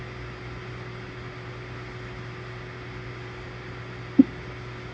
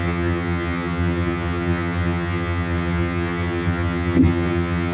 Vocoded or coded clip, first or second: second